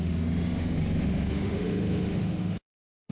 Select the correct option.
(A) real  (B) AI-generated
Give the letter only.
B